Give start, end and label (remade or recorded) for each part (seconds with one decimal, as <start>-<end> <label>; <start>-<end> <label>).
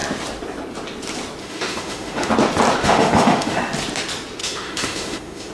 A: 0.0-1.4 recorded; 1.4-2.3 remade; 2.3-2.8 recorded; 2.8-3.6 remade; 3.6-4.4 recorded; 4.4-5.5 remade